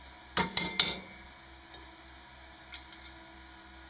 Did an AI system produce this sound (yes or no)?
no